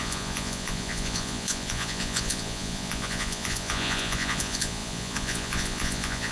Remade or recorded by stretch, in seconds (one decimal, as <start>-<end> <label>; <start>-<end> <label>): 0.0-6.3 remade